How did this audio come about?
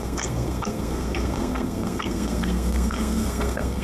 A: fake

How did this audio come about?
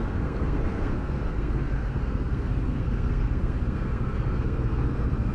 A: fake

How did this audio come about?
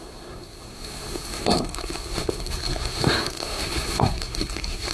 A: fake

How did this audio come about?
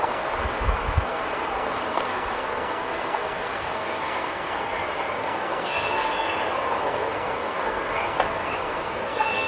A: fake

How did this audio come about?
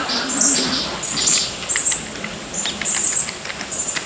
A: real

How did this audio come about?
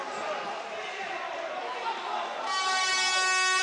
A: real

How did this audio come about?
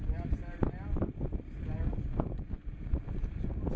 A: real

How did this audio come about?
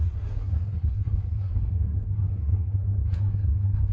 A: fake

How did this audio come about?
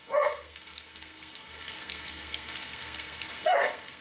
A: fake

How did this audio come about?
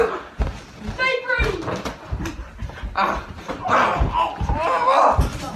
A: real